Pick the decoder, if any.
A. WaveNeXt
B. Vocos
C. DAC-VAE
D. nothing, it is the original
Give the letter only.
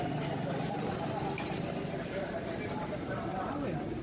D